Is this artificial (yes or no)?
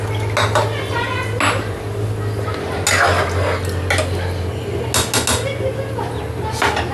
no